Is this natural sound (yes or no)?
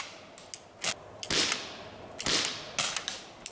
yes